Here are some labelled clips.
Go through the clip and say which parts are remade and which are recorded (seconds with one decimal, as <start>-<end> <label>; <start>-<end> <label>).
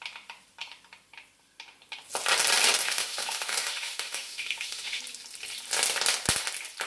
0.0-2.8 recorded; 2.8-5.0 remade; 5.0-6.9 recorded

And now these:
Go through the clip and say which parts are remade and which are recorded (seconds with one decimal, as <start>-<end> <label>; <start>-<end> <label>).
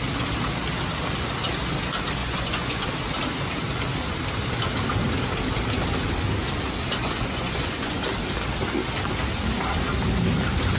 0.0-2.2 recorded; 2.2-2.8 remade; 2.8-7.0 recorded; 7.0-8.0 remade; 8.0-10.8 recorded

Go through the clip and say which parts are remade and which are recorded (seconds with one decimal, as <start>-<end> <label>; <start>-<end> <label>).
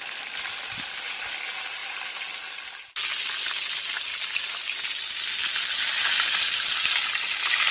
0.0-7.7 recorded